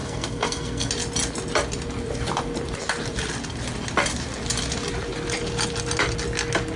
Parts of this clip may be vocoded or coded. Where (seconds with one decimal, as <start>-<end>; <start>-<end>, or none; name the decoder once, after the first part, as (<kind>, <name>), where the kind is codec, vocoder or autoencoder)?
0.0-0.9 (codec, SNAC)